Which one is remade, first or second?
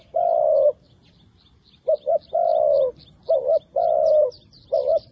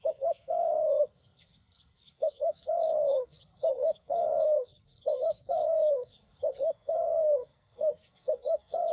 second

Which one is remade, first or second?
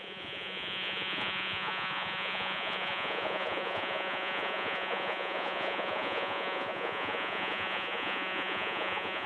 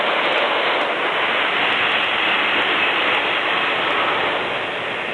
first